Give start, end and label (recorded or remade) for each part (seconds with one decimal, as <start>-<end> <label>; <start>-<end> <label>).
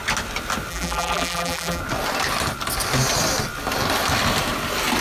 0.0-0.7 recorded; 0.7-1.8 remade; 1.8-5.0 recorded